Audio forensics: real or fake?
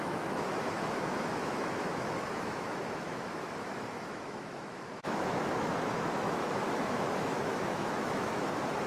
fake